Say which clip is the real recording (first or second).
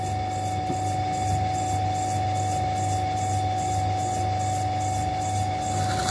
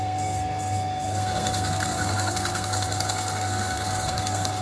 first